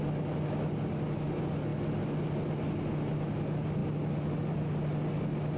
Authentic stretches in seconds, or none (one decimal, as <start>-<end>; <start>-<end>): 0.0-5.6